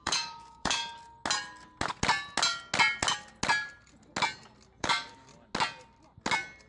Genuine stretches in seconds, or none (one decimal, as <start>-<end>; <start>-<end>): 0.8-4.8; 5.3-6.7